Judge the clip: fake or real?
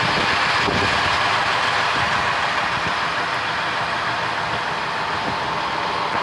real